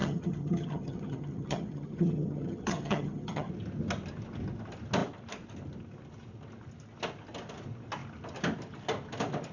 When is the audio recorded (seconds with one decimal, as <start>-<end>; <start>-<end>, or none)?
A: 3.5-9.5